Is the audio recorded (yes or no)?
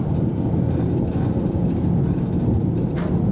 yes